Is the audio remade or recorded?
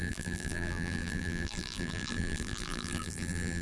remade